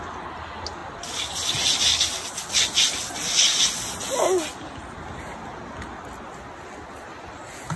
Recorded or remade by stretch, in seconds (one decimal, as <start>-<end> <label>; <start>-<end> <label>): 0.0-7.8 recorded